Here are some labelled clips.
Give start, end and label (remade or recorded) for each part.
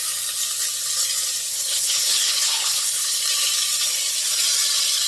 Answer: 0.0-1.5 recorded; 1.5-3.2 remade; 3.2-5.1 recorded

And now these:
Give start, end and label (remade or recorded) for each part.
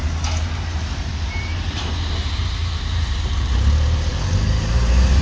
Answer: 0.0-0.4 recorded; 0.4-3.5 remade; 3.5-4.1 recorded; 4.1-5.2 remade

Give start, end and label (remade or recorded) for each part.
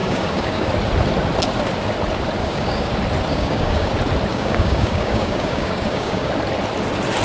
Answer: 0.0-0.7 remade; 0.7-2.4 recorded; 2.4-2.9 remade; 2.9-3.3 recorded; 3.3-3.9 remade; 3.9-4.3 recorded; 4.3-6.3 remade; 6.3-7.2 recorded